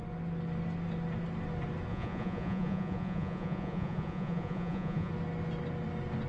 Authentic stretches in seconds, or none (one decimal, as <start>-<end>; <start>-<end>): 0.0-1.9; 5.1-6.3